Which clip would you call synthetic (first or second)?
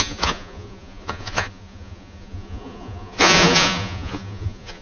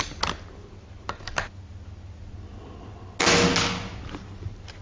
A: first